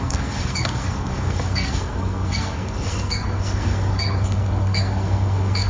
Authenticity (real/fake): fake